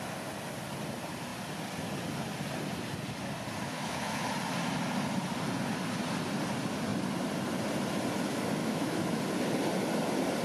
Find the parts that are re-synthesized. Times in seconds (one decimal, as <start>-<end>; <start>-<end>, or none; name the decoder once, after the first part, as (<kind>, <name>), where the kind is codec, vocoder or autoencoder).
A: 3.7-4.3 (autoencoder, DAC-VAE); 8.6-9.2